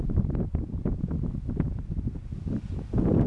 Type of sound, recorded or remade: recorded